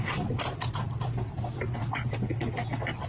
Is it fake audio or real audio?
real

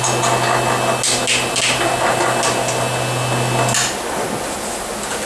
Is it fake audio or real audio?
real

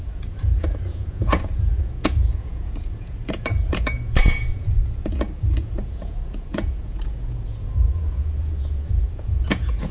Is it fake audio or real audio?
fake